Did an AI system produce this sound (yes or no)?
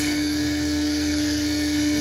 yes